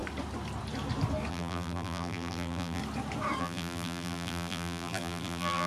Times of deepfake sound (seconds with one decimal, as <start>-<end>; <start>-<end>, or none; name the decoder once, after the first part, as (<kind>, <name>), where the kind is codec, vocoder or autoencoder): 1.3-2.8 (vocoder, BigVGAN v2); 3.4-5.7